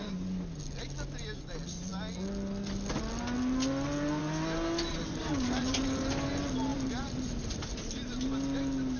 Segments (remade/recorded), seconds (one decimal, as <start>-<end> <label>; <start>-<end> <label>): 0.0-4.9 recorded; 4.9-6.3 remade; 6.3-6.7 recorded; 6.7-8.3 remade; 8.3-9.0 recorded